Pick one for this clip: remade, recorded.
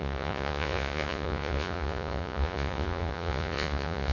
remade